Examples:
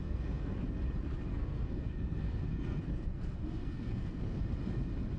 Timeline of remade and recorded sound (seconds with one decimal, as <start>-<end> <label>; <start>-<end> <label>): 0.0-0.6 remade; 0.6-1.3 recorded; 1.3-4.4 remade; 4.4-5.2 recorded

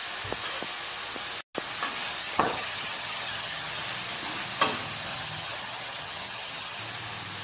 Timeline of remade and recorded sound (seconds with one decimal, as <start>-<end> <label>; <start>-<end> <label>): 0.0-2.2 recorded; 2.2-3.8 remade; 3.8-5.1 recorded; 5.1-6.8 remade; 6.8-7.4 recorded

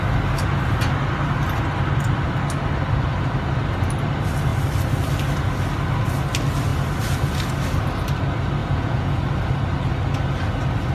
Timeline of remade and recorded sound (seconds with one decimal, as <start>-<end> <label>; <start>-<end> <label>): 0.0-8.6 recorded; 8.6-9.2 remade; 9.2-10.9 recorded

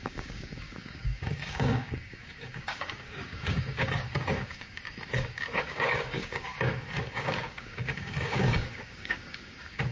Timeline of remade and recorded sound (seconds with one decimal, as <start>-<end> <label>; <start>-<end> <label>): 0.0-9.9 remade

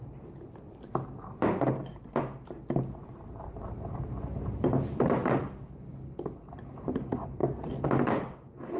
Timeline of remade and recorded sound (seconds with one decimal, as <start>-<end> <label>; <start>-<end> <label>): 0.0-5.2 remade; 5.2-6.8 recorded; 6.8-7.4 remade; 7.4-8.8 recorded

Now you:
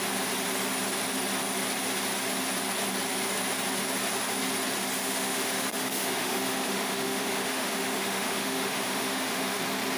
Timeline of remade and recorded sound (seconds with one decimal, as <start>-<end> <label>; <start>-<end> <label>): 0.0-5.0 recorded; 5.0-9.6 remade; 9.6-10.0 recorded

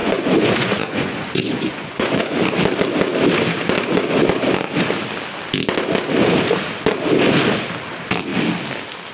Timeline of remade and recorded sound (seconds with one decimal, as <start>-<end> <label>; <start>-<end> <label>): 0.0-2.5 remade; 2.5-9.1 recorded

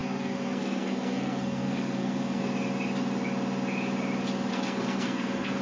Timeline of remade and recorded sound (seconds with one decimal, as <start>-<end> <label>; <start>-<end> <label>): 0.0-2.4 remade; 2.4-4.5 recorded; 4.5-5.6 remade